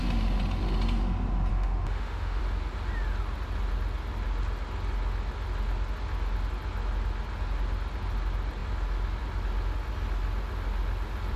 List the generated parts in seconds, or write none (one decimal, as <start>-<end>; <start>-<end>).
1.5-2.4